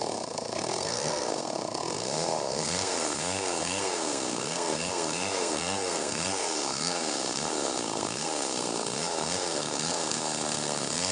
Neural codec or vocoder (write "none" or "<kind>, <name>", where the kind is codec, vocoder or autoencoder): codec, SNAC